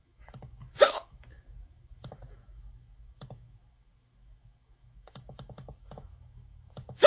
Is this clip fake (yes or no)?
yes